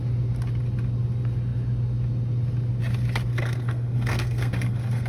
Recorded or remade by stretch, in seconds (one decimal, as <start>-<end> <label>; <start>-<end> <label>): 0.0-3.3 recorded; 3.3-5.1 remade